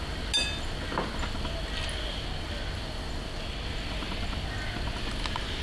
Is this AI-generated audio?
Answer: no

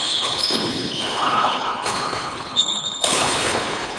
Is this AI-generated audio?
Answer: yes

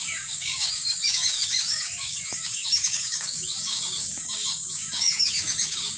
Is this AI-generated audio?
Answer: yes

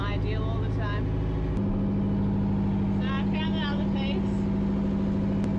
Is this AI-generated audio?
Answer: no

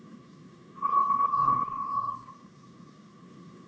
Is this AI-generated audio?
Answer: yes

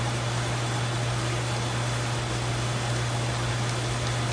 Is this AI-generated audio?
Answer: no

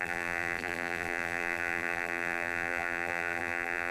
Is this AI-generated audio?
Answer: yes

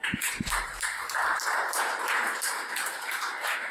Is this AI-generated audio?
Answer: yes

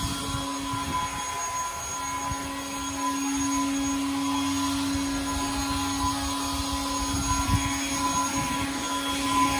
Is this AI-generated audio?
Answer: no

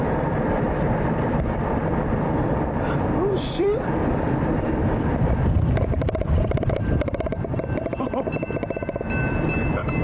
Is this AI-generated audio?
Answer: yes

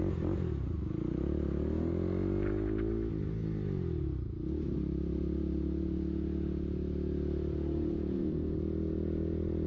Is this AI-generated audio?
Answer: no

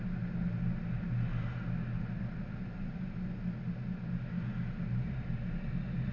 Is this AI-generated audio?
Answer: no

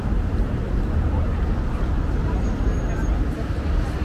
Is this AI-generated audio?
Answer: no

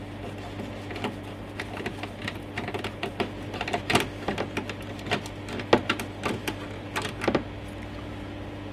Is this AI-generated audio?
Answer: no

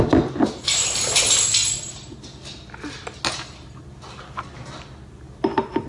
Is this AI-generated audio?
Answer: no